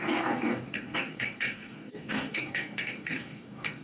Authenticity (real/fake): fake